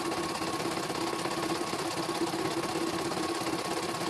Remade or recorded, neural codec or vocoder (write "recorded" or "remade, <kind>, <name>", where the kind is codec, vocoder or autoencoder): recorded